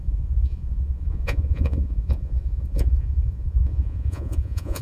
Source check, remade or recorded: remade